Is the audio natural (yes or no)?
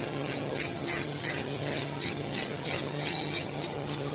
no